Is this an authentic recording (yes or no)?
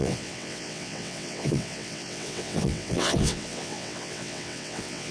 no